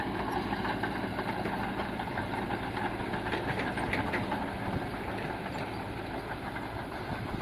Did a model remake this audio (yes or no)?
yes